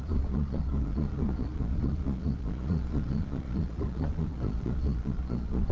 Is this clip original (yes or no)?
no